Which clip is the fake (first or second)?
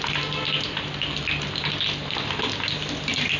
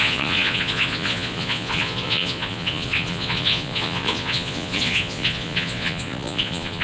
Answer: second